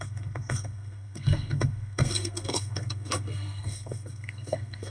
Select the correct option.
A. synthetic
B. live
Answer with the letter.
A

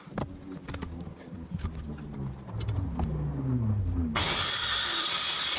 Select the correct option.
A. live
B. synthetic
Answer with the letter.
A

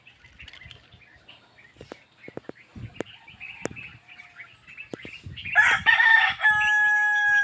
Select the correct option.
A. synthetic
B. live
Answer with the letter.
B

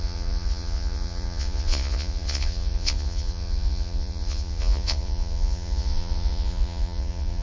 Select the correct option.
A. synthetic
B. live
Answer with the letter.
A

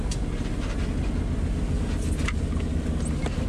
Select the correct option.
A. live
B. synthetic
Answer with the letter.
A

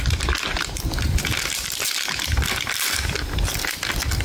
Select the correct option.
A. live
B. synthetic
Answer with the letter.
A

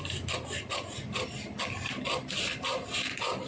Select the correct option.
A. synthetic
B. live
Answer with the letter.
B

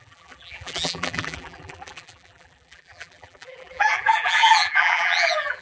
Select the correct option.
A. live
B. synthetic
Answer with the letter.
B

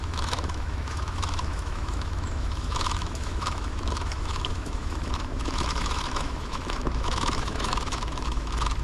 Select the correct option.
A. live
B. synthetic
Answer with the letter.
B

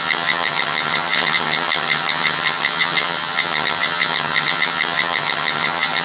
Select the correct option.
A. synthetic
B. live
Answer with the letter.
A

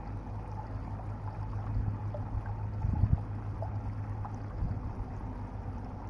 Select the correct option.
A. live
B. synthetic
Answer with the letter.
A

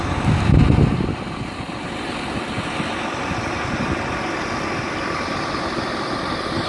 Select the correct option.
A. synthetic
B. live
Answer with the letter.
B